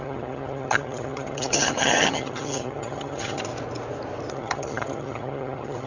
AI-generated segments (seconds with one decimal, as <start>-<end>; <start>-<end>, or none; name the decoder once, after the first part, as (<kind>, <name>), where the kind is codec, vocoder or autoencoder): 0.0-3.5 (vocoder, HiFi-GAN); 4.3-5.9